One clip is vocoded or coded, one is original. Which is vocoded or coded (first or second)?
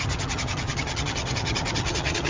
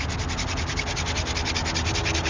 first